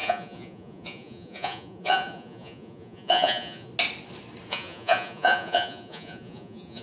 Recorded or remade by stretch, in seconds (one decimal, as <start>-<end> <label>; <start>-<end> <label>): 0.0-3.7 remade; 3.7-4.5 recorded; 4.5-6.8 remade